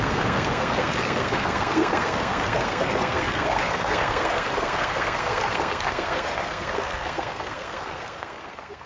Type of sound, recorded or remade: remade